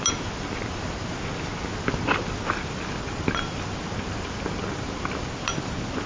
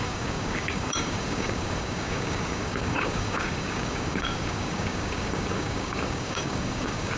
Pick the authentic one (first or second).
first